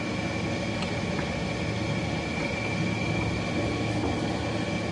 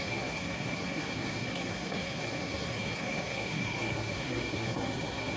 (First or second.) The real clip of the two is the first